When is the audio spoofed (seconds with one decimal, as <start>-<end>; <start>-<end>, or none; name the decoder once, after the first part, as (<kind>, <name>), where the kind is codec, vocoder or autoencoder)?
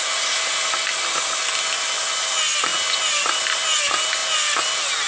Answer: none